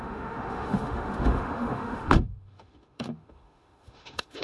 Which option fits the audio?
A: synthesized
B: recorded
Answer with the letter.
A